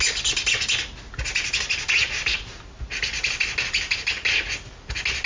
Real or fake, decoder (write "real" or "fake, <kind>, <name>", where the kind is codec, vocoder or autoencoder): real